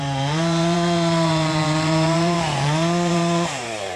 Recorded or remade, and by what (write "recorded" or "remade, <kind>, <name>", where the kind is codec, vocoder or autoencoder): remade, vocoder, BigVGAN v2